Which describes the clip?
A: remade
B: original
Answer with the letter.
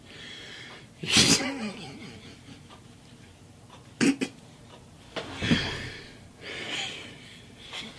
B